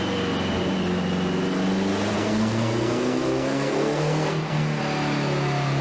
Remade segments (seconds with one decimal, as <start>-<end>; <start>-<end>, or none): 2.1-4.8